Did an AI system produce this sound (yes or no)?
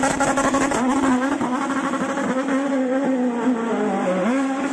no